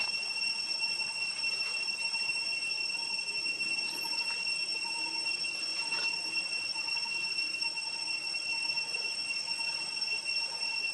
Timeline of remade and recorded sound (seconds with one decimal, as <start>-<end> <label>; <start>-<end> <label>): 0.0-10.9 recorded

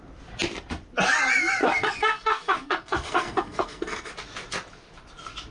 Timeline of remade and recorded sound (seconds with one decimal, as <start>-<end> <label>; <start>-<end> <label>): 0.0-1.6 recorded; 1.6-4.1 remade; 4.1-5.5 recorded

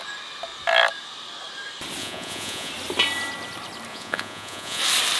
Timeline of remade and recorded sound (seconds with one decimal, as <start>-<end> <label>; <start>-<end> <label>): 0.0-2.0 recorded; 2.0-2.7 remade; 2.7-3.9 recorded; 3.9-4.8 remade; 4.8-5.2 recorded